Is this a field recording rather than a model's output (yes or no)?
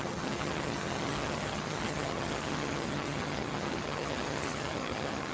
no